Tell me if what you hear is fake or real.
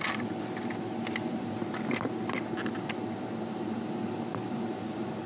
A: real